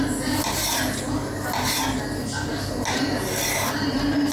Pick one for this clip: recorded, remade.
recorded